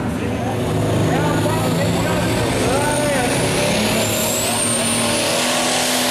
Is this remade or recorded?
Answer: recorded